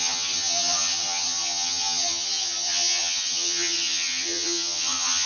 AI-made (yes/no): yes